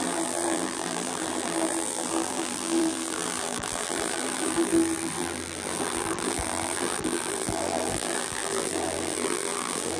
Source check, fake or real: fake